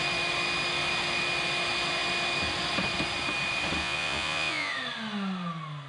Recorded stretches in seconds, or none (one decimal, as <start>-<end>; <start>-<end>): 0.0-3.8; 4.7-5.9